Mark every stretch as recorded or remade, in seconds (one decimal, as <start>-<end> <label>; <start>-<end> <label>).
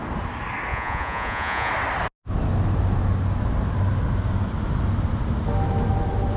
0.0-0.7 recorded; 0.7-1.7 remade; 1.7-6.4 recorded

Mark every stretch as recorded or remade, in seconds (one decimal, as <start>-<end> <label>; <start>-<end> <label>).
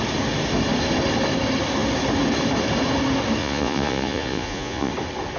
0.0-3.4 recorded; 3.4-4.9 remade; 4.9-5.4 recorded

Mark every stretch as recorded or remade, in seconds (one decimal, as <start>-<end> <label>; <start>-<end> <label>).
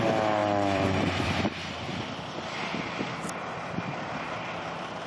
0.0-0.4 recorded; 0.4-2.8 remade; 2.8-5.1 recorded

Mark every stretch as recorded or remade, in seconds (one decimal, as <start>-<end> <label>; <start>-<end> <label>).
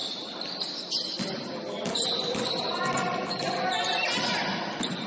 0.0-5.1 recorded